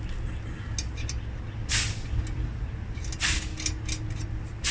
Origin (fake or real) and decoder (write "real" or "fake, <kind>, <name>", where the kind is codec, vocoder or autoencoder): real